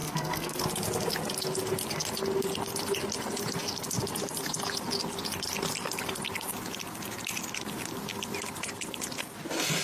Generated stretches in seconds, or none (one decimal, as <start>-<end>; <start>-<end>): 0.0-0.6